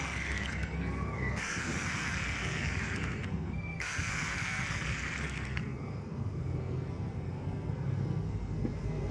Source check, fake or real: fake